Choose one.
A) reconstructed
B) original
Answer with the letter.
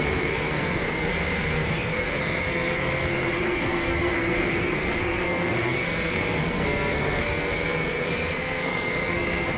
A